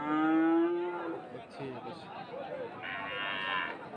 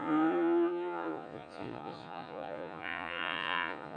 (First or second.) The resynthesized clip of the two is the second